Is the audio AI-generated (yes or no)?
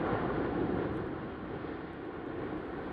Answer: no